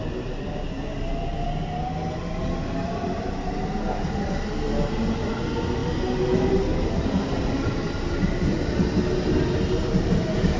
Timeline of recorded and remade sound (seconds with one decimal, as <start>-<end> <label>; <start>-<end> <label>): 0.0-10.6 recorded